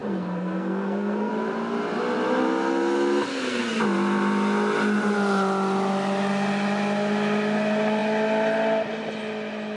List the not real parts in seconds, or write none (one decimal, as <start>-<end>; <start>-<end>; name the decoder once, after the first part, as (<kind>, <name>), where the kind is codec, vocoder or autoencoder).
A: 0.0-1.3 (codec, SNAC); 3.3-3.8